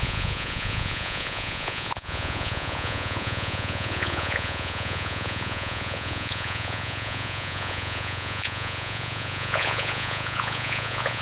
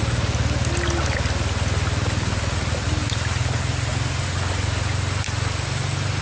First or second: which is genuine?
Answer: second